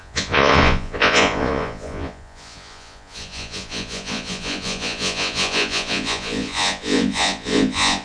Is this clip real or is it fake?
fake